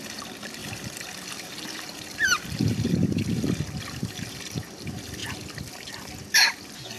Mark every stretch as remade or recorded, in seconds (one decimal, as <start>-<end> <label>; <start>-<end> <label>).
0.0-0.6 recorded; 0.6-4.8 remade; 4.8-7.0 recorded